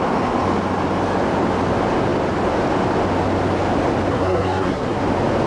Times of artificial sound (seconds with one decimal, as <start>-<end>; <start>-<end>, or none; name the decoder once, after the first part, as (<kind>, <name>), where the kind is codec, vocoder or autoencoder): 4.1-5.0 (codec, SNAC)